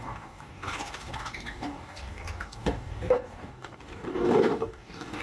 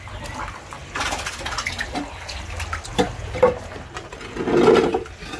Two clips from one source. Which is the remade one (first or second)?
first